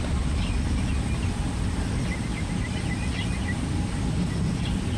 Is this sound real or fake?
real